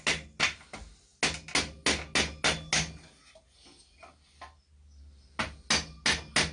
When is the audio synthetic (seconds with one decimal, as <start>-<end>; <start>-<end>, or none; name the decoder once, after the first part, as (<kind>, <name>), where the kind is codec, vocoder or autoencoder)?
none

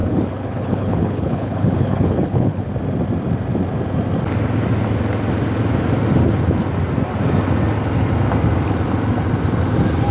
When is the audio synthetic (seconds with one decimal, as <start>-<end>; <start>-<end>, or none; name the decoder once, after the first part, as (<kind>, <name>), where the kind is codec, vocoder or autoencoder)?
0.0-2.7 (codec, HILCodec)

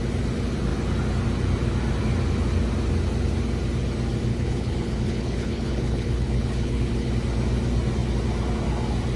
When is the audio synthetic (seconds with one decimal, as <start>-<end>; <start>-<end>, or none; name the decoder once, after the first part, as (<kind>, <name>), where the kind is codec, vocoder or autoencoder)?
4.3-7.1 (codec, HILCodec)

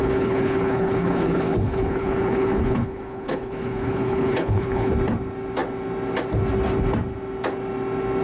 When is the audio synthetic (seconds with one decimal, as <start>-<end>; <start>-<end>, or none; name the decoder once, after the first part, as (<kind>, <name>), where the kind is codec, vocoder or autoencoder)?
0.0-4.9 (codec, HILCodec)